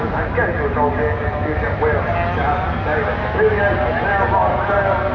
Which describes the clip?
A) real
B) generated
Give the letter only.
A